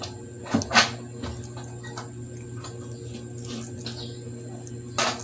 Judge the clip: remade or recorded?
recorded